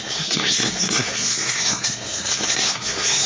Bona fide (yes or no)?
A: no